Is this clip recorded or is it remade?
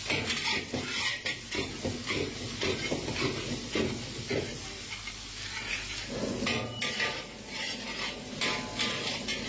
recorded